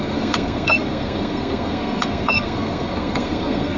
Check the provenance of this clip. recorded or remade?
remade